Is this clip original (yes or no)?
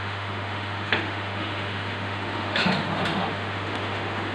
no